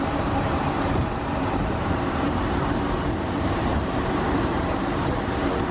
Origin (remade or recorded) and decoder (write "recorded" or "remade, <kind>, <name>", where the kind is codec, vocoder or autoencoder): remade, vocoder, BigVGAN v2